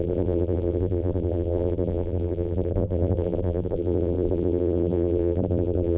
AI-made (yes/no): yes